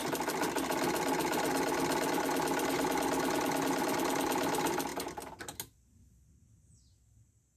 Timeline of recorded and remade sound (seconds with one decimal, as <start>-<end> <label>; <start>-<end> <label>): 0.0-7.6 recorded